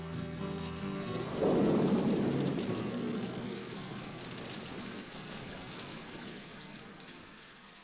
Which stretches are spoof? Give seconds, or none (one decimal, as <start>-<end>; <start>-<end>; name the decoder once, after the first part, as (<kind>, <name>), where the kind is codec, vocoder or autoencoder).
0.0-1.3 (codec, SNAC); 2.8-4.2; 4.8-7.8